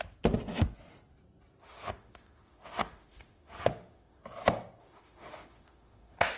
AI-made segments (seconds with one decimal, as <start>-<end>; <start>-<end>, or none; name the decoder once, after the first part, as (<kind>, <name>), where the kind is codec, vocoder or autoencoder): 1.6-4.2 (autoencoder, DAC-VAE); 4.8-6.4